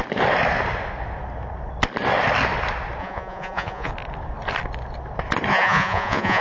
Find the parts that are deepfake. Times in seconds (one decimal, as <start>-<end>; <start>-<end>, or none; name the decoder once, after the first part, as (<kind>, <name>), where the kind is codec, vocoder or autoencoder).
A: 3.0-3.9 (vocoder, Vocos); 5.5-6.4